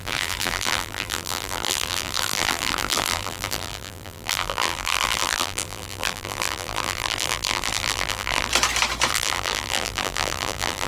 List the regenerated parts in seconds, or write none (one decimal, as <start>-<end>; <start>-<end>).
0.0-8.5; 9.1-10.9